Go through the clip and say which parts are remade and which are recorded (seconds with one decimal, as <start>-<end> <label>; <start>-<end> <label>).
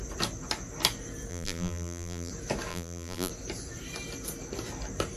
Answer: 0.0-1.3 recorded; 1.3-2.3 remade; 2.3-2.7 recorded; 2.7-3.3 remade; 3.3-5.2 recorded